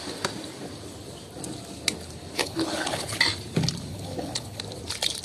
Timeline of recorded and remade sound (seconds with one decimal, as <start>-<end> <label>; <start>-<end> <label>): 0.0-2.4 recorded; 2.4-3.2 remade; 3.2-3.9 recorded; 3.9-4.6 remade; 4.6-5.2 recorded